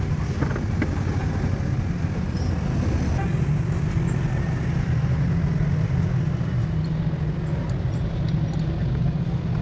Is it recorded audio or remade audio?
recorded